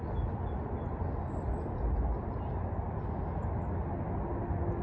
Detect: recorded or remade recorded